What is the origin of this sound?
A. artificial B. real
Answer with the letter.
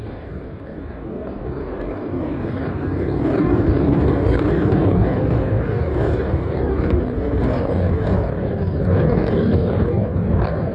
A